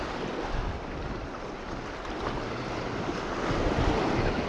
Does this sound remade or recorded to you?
recorded